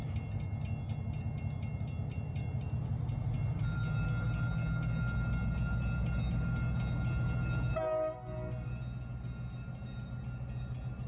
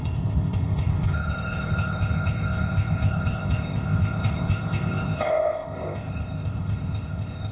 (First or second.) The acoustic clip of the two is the first